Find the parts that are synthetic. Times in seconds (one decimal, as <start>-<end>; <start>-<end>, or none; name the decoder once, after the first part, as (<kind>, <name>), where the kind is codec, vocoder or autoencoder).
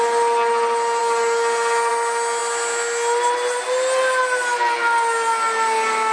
none